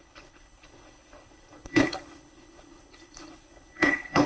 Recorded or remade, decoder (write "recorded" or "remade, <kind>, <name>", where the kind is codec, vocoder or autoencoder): remade, codec, HILCodec